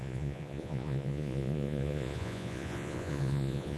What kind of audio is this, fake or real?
fake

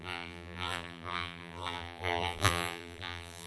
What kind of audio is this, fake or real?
fake